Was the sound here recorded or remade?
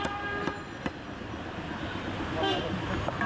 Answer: recorded